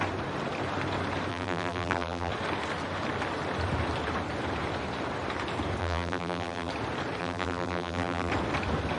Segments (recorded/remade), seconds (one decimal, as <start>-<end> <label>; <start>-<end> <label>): 0.0-1.3 recorded; 1.3-2.3 remade; 2.3-5.8 recorded; 5.8-6.7 remade; 6.7-7.2 recorded; 7.2-8.3 remade; 8.3-9.0 recorded